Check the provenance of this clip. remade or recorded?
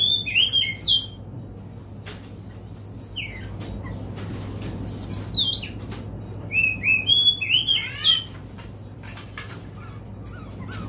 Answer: recorded